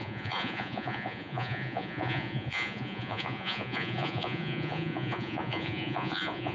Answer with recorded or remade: remade